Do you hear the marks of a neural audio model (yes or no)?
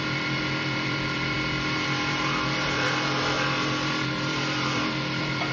yes